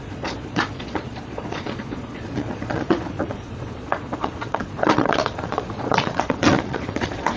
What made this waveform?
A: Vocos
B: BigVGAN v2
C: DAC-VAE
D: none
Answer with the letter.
A